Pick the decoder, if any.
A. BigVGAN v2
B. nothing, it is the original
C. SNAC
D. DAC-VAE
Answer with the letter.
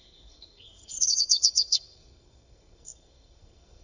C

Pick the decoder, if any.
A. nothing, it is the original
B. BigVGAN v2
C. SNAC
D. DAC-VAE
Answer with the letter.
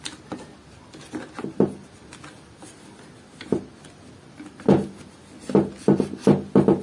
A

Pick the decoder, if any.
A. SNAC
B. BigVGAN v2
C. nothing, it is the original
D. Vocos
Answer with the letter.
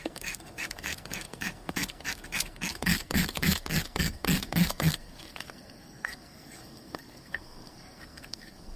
A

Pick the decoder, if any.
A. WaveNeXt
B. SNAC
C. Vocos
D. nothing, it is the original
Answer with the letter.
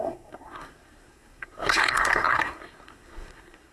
B